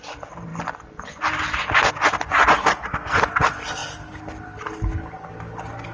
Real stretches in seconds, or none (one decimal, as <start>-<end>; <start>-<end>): 0.0-2.7; 3.2-5.9